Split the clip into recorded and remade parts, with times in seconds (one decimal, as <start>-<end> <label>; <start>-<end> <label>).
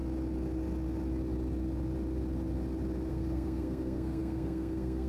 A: 0.0-3.1 recorded; 3.1-5.1 remade